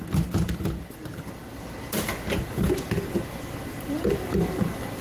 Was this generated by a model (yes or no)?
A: no